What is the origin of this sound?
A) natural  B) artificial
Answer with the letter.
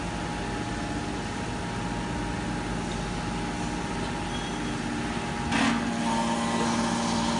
A